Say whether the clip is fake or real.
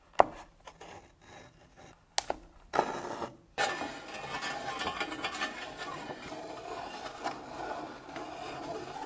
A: real